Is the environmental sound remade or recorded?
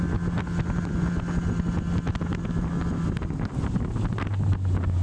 recorded